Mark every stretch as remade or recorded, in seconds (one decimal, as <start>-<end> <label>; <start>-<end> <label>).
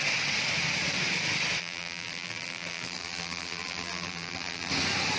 0.0-1.6 recorded; 1.6-4.7 remade; 4.7-5.2 recorded